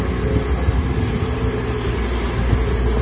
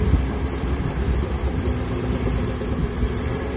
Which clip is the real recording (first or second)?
first